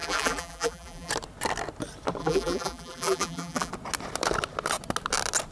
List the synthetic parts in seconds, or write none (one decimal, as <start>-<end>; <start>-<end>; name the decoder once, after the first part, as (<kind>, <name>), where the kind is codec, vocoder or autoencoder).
0.0-1.1 (vocoder, BigVGAN v2); 2.2-3.7